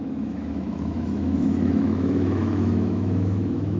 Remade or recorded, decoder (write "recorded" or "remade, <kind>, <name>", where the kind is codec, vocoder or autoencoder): remade, autoencoder, DAC-VAE